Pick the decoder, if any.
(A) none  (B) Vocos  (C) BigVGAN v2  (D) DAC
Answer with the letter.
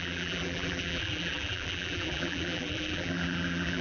C